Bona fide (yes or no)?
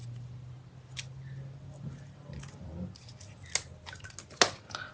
yes